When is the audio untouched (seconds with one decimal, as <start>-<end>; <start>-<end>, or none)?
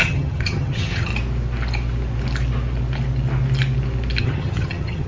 1.1-4.2